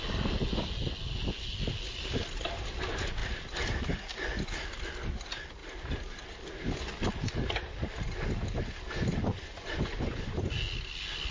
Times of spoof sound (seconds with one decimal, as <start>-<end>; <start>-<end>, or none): 9.3-10.5